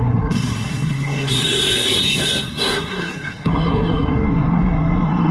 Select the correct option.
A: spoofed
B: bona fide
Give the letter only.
A